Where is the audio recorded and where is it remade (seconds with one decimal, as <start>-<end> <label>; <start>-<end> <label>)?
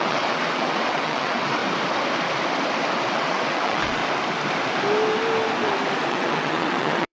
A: 0.0-1.6 remade; 1.6-3.1 recorded; 3.1-4.0 remade; 4.0-6.1 recorded; 6.1-7.1 remade